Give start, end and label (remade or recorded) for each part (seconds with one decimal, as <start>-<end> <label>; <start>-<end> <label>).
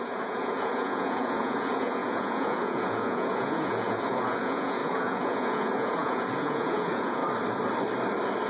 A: 0.0-7.2 remade; 7.2-8.5 recorded